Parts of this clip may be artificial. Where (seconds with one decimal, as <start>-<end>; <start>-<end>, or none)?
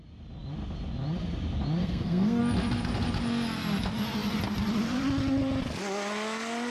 1.8-2.4